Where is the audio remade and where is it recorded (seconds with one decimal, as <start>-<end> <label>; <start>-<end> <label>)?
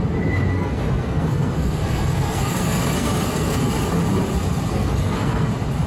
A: 0.0-0.5 recorded; 0.5-3.7 remade; 3.7-4.7 recorded; 4.7-5.5 remade; 5.5-5.9 recorded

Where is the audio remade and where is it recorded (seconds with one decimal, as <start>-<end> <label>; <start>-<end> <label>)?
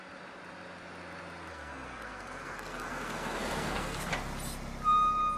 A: 0.0-1.5 recorded; 1.5-4.1 remade; 4.1-5.4 recorded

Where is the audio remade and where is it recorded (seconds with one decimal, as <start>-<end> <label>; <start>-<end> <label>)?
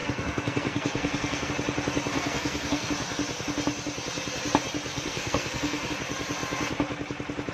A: 0.0-1.5 remade; 1.5-2.1 recorded; 2.1-2.9 remade; 2.9-4.9 recorded; 4.9-5.9 remade; 5.9-7.5 recorded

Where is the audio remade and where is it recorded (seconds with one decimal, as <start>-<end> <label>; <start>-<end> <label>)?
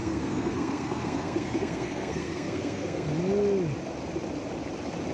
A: 0.0-3.1 remade; 3.1-5.1 recorded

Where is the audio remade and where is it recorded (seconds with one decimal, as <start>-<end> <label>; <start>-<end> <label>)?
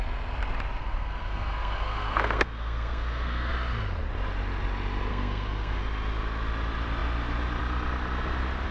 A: 0.0-0.8 recorded; 0.8-3.5 remade; 3.5-5.1 recorded; 5.1-5.8 remade; 5.8-8.7 recorded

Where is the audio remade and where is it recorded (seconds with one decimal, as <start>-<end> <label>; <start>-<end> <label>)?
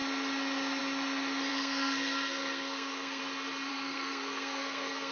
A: 0.0-1.5 recorded; 1.5-3.2 remade; 3.2-3.7 recorded; 3.7-5.1 remade